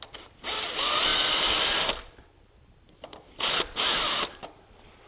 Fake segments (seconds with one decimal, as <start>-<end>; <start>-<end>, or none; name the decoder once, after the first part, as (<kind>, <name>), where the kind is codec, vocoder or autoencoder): none